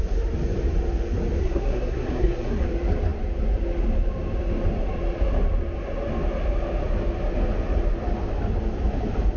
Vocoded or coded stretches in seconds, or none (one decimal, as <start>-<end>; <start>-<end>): 1.4-2.6

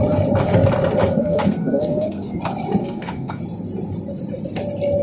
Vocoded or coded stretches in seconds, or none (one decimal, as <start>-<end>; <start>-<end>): 1.2-2.4; 2.8-3.4

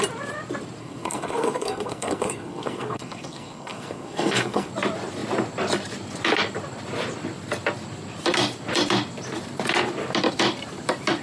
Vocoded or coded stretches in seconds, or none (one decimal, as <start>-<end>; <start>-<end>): 0.8-4.7